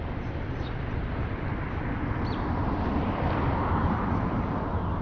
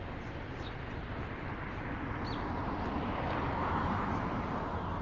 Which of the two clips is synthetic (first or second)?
first